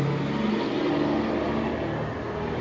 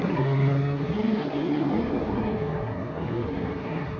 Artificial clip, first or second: second